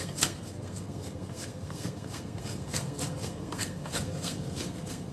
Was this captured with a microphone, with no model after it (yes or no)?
no